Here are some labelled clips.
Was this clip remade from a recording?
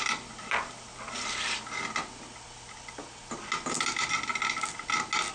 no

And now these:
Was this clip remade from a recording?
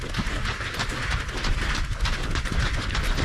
no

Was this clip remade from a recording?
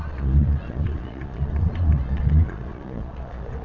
yes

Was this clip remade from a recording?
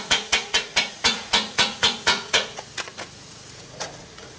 yes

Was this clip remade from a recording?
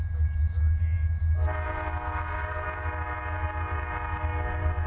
no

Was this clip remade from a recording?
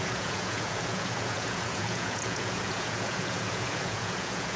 yes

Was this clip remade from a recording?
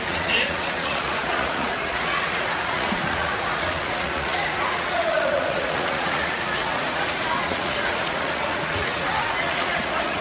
yes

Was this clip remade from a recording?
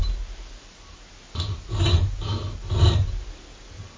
no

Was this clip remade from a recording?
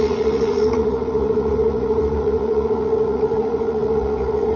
yes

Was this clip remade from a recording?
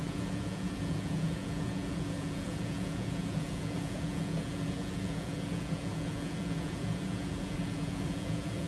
yes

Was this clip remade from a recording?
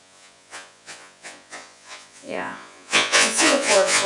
yes